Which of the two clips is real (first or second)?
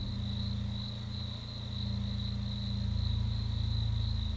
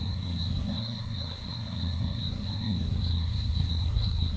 first